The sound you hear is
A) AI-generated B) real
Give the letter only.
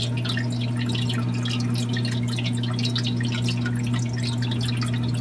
B